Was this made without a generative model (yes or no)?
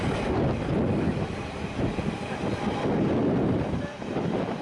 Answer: yes